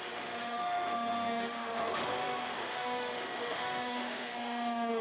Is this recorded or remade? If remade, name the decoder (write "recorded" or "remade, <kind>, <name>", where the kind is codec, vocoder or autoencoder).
remade, autoencoder, DAC-VAE